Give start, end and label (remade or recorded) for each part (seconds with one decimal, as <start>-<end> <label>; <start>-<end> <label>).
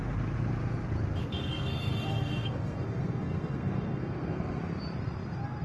0.0-1.2 recorded; 1.2-4.6 remade; 4.6-5.6 recorded